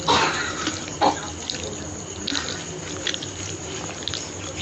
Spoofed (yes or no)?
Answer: no